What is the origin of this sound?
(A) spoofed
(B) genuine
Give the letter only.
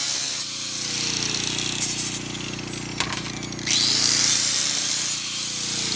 B